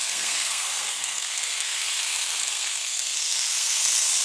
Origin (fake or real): fake